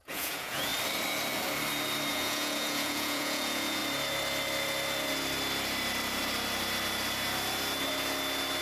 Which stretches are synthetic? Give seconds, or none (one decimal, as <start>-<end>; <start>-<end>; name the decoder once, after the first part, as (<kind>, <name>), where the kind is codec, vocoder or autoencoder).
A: 0.0-0.7 (vocoder, Vocos); 2.1-3.8

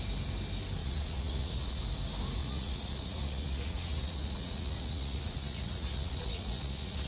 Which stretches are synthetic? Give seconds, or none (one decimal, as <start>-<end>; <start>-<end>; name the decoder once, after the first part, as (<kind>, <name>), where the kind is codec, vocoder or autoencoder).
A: 0.8-1.8 (vocoder, Vocos); 2.4-7.1

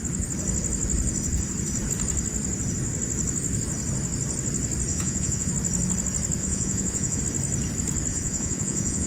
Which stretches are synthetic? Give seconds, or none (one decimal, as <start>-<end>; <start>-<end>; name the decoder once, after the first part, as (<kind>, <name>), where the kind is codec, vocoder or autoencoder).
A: 4.9-5.5 (vocoder, Vocos); 6.4-7.2; 8.1-9.1

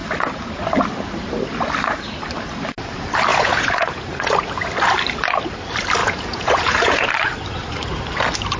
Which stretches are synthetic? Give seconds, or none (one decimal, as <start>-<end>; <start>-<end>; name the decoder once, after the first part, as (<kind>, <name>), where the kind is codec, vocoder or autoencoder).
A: 3.3-4.0 (vocoder, Vocos); 6.0-7.1